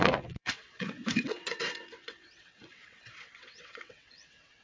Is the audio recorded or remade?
remade